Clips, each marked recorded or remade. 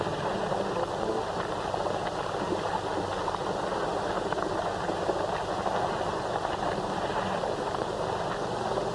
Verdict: recorded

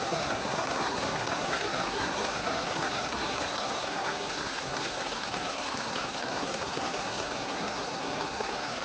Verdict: remade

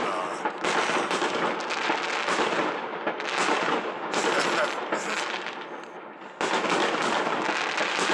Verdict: recorded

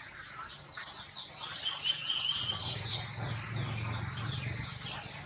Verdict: recorded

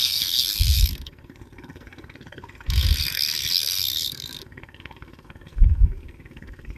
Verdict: remade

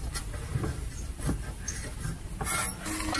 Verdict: recorded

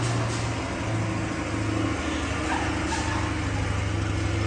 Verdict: recorded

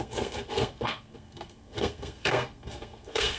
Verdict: remade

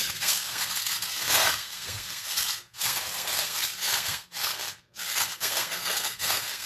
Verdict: remade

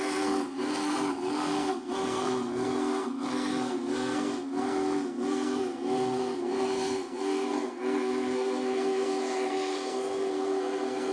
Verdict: remade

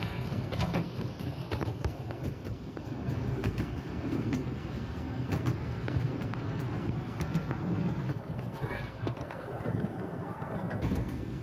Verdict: remade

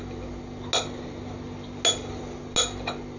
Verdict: recorded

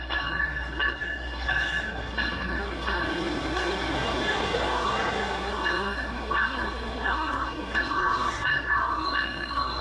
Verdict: remade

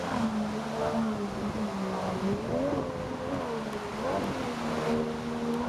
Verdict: recorded